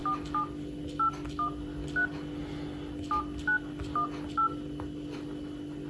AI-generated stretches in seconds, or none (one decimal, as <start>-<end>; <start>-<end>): none